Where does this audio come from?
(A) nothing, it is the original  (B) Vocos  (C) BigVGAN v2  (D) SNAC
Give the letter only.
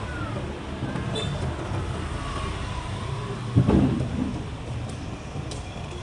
A